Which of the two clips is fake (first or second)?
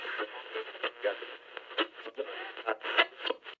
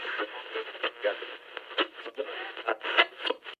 second